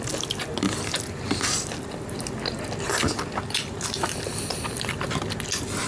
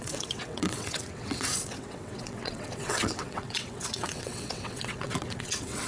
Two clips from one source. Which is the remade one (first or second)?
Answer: second